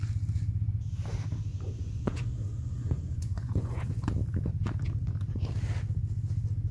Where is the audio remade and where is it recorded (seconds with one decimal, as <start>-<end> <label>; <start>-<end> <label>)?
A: 0.0-1.5 recorded; 1.5-4.1 remade; 4.1-6.7 recorded